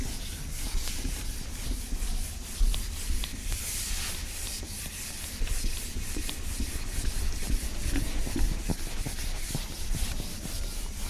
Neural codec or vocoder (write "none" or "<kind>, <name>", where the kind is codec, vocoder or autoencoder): vocoder, BigVGAN v2